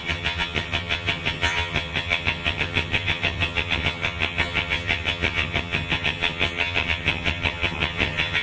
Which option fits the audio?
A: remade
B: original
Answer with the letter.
A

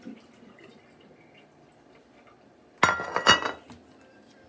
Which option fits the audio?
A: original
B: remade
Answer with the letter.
A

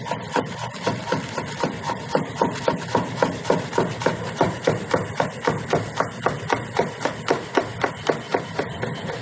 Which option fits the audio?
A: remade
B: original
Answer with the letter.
B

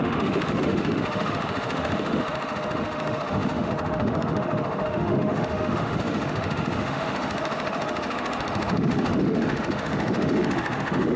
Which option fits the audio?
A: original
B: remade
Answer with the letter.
B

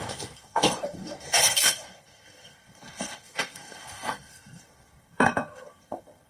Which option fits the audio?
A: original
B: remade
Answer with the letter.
B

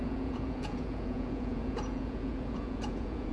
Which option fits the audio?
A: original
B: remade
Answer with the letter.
B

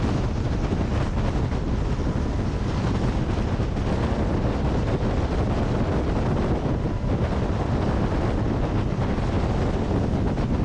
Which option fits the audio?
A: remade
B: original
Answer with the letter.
B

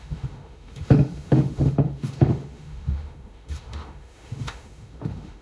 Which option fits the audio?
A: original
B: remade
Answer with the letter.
B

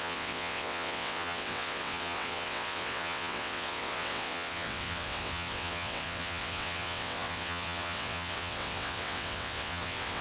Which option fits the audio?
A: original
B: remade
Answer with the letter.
B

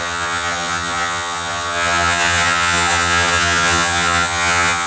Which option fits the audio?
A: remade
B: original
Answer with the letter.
A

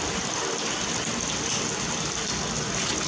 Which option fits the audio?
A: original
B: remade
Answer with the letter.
A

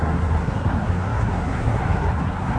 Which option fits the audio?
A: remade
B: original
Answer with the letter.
A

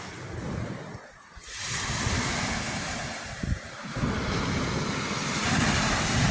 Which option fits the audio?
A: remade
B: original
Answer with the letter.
A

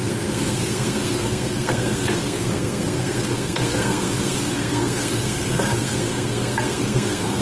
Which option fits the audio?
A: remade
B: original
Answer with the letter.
A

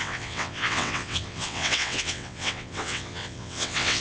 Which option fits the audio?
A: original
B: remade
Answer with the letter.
B